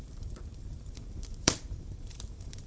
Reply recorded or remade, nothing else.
remade